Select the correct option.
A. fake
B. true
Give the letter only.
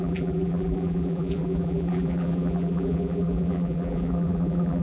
A